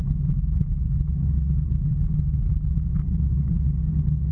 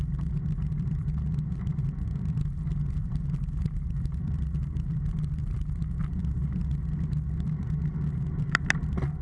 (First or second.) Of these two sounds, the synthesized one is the second